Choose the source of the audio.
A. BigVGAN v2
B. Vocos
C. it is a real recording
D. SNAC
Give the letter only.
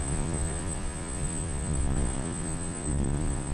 B